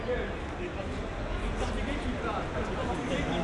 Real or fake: real